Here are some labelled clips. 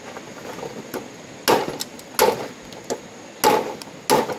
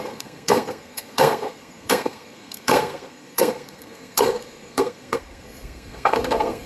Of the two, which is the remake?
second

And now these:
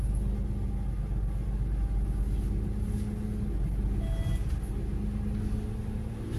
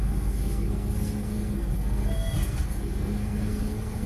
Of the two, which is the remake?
second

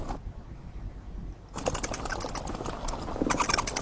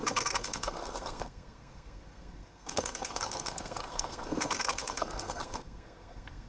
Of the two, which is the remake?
second